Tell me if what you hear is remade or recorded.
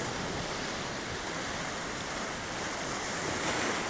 recorded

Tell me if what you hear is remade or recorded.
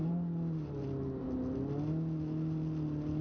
recorded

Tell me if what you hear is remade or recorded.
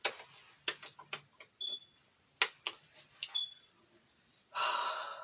recorded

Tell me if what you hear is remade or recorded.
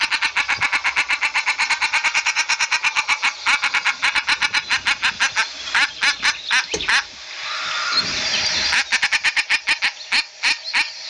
recorded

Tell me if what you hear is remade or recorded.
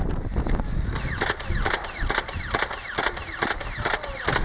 recorded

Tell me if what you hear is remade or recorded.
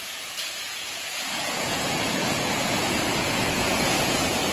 remade